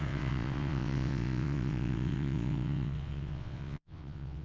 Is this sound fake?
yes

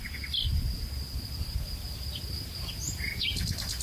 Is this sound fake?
no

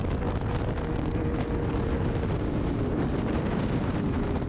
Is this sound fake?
no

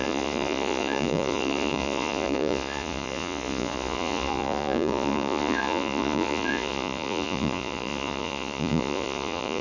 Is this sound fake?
yes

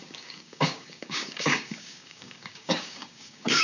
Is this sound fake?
yes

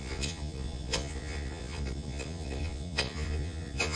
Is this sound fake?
yes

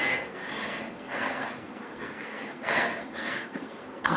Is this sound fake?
yes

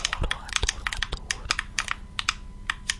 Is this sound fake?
no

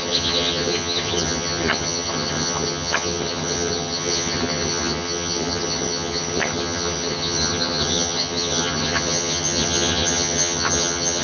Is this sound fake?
yes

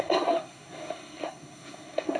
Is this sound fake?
yes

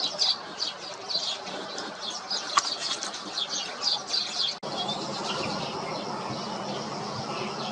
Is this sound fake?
no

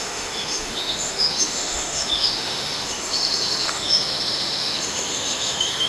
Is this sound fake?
yes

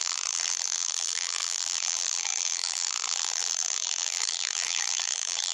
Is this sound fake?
yes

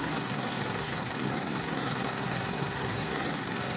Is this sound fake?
yes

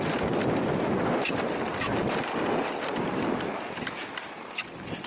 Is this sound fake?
no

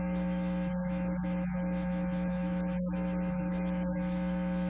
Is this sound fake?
yes